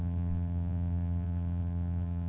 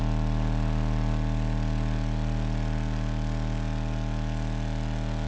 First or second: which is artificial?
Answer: first